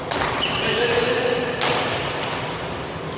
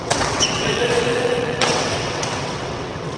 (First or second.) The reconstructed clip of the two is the second